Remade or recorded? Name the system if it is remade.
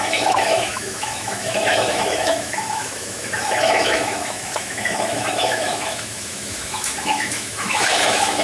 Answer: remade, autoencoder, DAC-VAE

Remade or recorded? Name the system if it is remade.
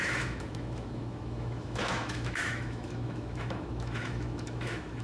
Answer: remade, autoencoder, DAC-VAE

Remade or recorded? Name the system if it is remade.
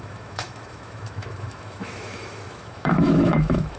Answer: remade, autoencoder, DAC-VAE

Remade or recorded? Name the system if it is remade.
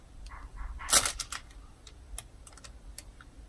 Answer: recorded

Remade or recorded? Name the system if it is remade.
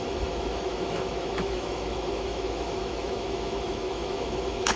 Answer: remade, autoencoder, DAC-VAE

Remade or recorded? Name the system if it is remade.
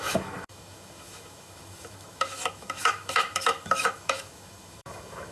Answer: remade, autoencoder, DAC-VAE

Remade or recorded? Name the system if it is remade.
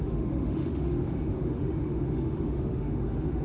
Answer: remade, autoencoder, DAC-VAE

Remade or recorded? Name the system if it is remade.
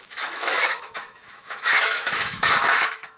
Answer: remade, autoencoder, DAC-VAE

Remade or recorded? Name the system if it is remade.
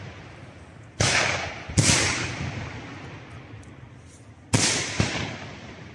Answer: recorded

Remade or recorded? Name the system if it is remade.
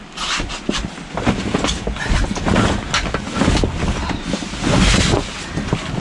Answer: recorded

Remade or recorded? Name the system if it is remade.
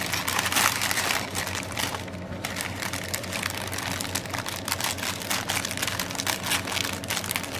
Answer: recorded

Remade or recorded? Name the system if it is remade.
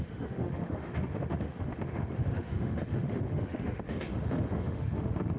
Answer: remade, autoencoder, DAC-VAE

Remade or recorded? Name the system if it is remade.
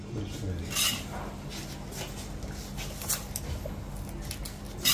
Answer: recorded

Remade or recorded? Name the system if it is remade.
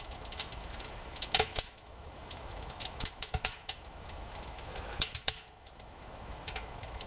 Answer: remade, autoencoder, DAC-VAE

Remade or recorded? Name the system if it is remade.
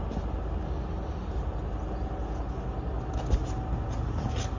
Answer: recorded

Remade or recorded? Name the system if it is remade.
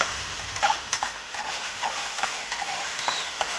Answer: remade, autoencoder, DAC-VAE